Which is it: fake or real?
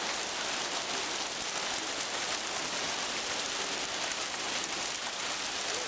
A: real